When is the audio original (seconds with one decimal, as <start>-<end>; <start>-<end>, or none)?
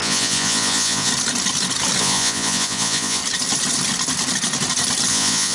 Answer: 1.1-2.0; 3.2-5.1